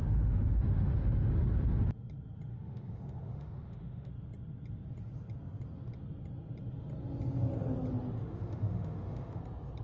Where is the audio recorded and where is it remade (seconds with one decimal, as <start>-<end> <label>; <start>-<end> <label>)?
0.0-1.3 remade; 1.3-2.5 recorded; 2.5-4.1 remade; 4.1-8.2 recorded; 8.2-9.4 remade; 9.4-9.8 recorded